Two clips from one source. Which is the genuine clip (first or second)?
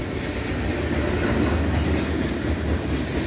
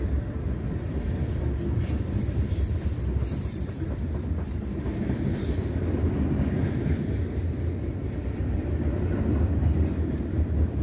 first